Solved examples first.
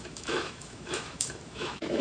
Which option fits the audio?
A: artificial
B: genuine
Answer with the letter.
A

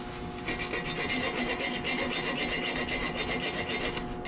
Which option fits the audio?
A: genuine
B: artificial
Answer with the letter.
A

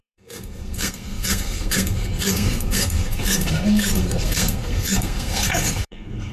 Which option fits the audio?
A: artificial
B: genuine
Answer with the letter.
A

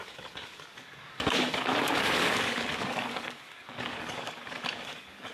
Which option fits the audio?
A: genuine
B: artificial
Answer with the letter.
B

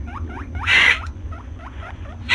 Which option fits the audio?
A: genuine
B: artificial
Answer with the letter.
B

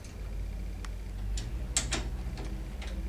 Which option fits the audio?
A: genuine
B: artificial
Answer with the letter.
A